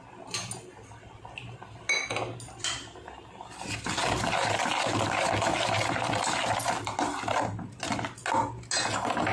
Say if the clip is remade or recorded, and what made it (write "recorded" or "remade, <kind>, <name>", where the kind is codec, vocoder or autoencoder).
recorded